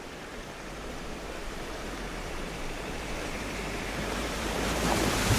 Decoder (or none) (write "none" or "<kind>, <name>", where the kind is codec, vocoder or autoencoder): vocoder, BigVGAN v2